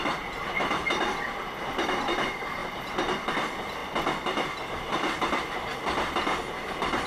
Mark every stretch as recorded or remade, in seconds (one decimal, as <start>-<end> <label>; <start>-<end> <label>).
0.0-2.6 remade; 2.6-3.3 recorded; 3.3-7.1 remade